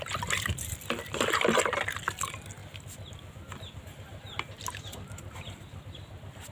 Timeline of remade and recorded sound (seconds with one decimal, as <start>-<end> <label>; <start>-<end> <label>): 0.0-6.5 recorded